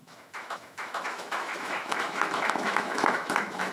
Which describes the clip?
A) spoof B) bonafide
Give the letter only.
A